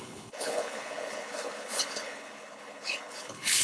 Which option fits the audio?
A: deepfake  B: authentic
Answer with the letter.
A